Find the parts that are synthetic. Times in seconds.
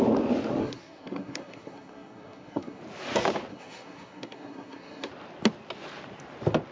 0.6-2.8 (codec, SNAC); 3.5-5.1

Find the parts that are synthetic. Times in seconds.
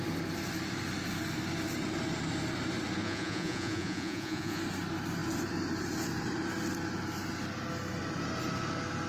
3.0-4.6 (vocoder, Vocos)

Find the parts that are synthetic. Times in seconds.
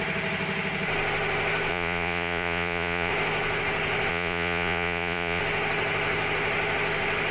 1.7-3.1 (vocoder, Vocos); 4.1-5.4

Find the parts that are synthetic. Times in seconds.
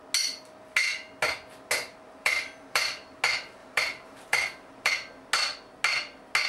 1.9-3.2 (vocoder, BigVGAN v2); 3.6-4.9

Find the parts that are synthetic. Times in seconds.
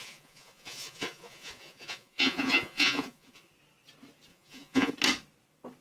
0.0-3.5 (vocoder, Vocos); 4.3-4.9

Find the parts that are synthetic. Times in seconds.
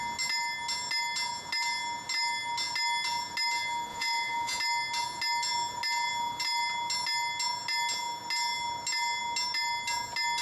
3.9-4.6 (vocoder, Vocos)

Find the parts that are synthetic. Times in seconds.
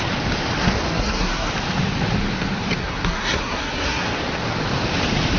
0.9-1.5 (codec, SNAC); 2.8-4.1